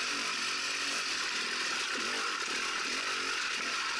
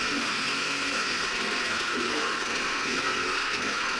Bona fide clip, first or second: first